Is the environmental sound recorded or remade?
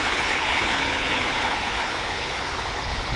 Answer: remade